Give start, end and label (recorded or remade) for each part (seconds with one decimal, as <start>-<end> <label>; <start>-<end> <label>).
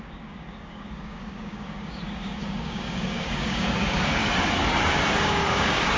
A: 0.0-4.2 remade; 4.2-5.2 recorded; 5.2-6.0 remade